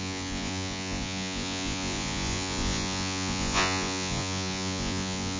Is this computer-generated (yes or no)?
yes